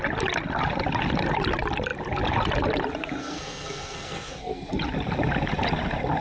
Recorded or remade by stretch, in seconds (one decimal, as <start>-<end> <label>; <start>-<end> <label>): 0.0-3.2 recorded; 3.2-4.7 remade; 4.7-6.2 recorded